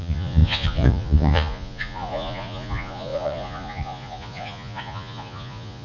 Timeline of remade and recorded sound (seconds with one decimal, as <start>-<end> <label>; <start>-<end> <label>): 0.0-5.8 remade